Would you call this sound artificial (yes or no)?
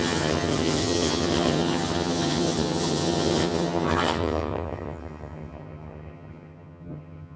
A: yes